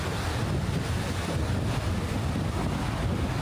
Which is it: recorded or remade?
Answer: recorded